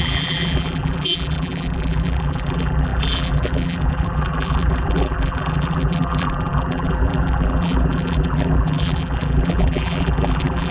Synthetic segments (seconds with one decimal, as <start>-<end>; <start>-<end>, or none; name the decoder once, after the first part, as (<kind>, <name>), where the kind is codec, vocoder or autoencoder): 0.0-10.7 (vocoder, BigVGAN v2)